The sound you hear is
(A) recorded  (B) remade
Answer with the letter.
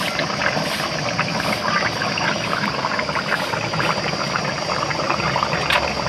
A